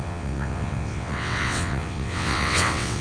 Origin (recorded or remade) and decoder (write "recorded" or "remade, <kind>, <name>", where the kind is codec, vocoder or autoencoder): remade, vocoder, WaveNeXt